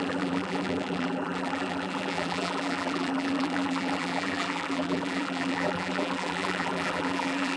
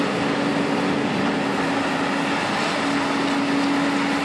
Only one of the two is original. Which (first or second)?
second